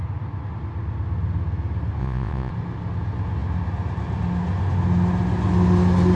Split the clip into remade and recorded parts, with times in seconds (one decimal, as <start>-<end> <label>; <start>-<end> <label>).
0.0-2.0 recorded; 2.0-2.5 remade; 2.5-6.2 recorded